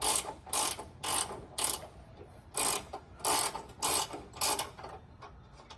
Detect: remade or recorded recorded